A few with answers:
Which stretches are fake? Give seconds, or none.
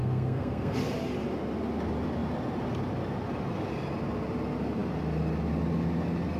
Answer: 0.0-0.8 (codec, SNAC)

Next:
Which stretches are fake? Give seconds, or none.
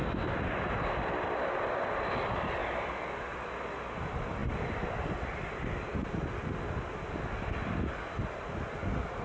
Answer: none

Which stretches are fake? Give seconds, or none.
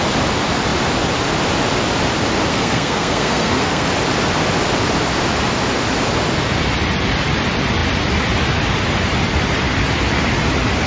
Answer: 2.5-3.9 (codec, SNAC)